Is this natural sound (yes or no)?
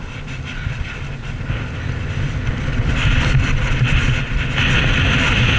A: yes